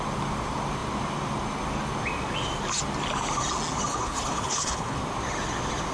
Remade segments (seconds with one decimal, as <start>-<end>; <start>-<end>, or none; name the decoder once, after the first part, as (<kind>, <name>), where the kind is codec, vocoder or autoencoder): 3.9-5.0 (codec, HILCodec)